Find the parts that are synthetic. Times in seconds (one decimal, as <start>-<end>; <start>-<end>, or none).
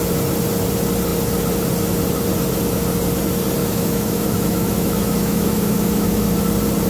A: 3.6-6.3